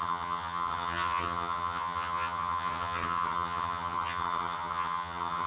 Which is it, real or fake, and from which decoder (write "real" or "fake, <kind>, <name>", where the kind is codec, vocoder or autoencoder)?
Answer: fake, vocoder, HiFi-GAN